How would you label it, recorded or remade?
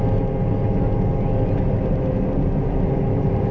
recorded